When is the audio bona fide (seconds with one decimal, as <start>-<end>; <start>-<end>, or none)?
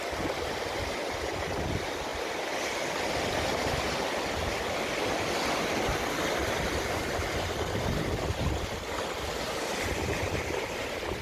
0.0-11.2